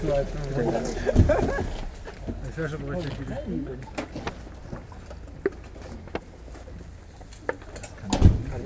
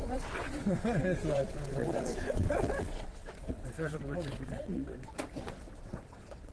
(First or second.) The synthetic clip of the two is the second